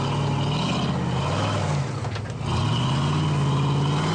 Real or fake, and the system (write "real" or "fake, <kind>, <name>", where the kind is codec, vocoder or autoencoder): real